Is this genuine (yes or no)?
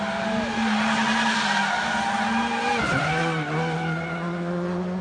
yes